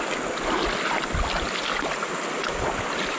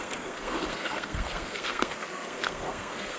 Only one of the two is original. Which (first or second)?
first